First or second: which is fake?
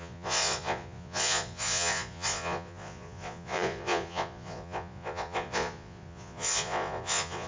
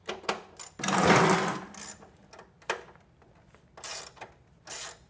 first